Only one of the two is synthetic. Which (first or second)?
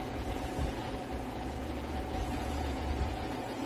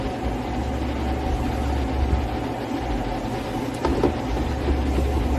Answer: first